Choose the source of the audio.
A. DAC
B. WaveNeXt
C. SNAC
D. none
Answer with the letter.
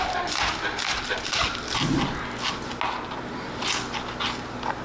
D